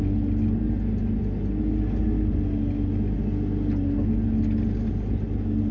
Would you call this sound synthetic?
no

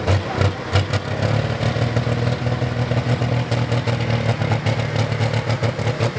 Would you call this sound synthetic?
no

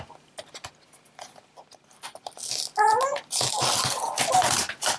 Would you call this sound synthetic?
no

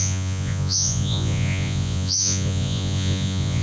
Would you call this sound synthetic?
yes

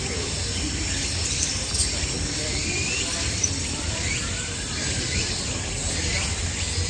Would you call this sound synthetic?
no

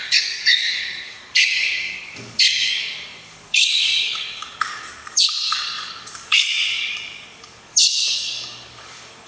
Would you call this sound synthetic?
yes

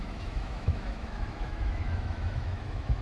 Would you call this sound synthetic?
yes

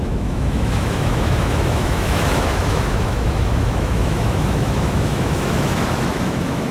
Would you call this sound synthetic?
yes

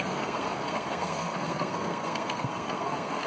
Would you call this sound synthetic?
yes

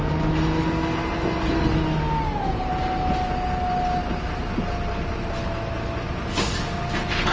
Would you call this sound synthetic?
no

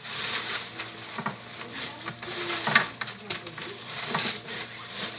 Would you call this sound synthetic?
no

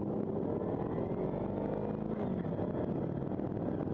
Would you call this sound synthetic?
no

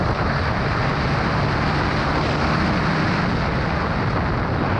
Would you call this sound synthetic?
no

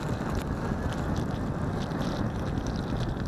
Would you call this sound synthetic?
no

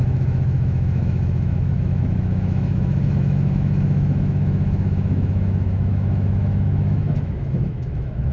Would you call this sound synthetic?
yes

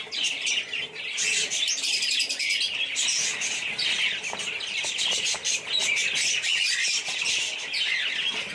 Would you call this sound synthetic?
no